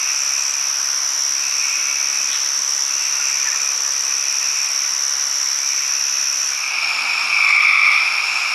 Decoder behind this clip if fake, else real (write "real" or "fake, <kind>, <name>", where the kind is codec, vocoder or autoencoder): real